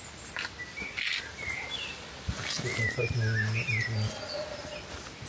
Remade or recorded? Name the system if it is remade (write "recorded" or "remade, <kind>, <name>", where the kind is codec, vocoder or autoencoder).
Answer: recorded